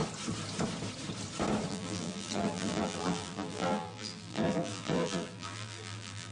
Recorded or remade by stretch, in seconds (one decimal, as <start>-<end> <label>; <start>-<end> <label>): 0.0-1.7 recorded; 1.7-6.3 remade